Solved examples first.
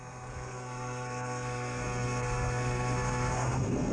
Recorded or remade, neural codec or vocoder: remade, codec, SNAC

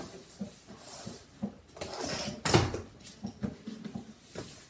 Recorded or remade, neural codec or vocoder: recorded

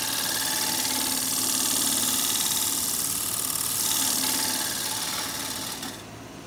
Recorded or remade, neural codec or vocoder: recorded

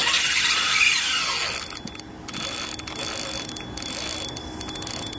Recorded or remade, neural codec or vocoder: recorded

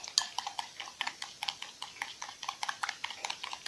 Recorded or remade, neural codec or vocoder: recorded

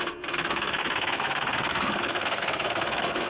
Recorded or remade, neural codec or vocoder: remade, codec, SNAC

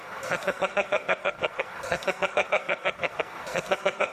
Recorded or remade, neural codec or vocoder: remade, codec, SNAC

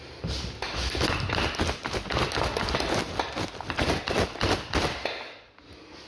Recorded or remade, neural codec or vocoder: recorded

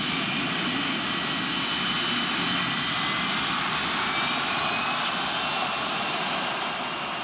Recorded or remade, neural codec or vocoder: recorded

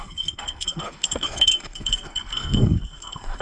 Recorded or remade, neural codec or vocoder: remade, codec, SNAC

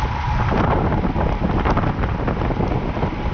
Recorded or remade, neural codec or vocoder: recorded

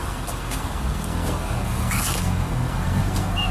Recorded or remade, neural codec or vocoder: remade, codec, SNAC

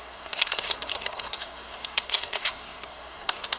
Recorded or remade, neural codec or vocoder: remade, codec, SNAC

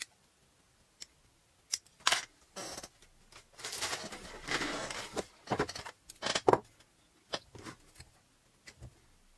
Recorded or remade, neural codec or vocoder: recorded